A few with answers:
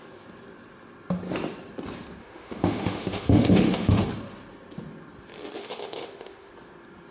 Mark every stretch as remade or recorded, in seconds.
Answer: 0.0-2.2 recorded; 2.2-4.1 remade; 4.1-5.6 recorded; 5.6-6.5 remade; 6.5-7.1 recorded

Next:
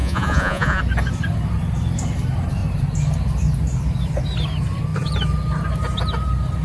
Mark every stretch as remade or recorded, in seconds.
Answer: 0.0-0.8 remade; 0.8-6.6 recorded

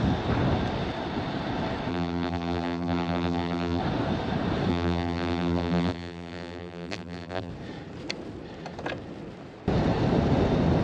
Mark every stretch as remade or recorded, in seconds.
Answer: 0.0-1.9 recorded; 1.9-3.8 remade; 3.8-4.7 recorded; 4.7-7.5 remade; 7.5-10.8 recorded

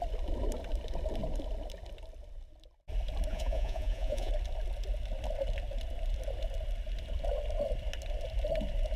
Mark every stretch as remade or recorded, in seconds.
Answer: 0.0-3.3 recorded; 3.3-4.3 remade; 4.3-9.0 recorded